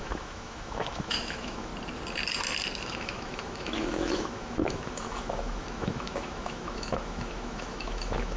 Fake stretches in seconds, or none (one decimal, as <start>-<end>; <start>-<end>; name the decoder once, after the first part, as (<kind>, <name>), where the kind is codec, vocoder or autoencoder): 0.0-1.7 (autoencoder, DAC-VAE); 2.8-8.4